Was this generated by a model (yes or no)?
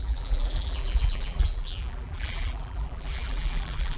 yes